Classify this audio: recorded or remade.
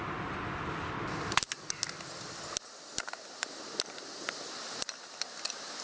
recorded